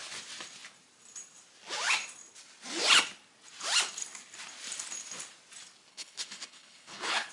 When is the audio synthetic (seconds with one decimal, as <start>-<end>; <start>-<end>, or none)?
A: 5.9-7.3